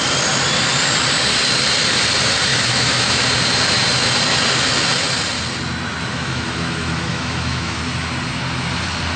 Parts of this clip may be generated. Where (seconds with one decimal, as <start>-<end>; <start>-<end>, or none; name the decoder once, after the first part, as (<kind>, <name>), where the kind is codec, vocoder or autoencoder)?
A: 2.5-3.2 (autoencoder, DAC-VAE); 6.1-7.8